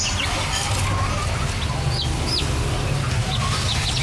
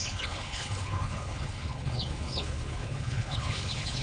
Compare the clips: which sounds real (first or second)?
first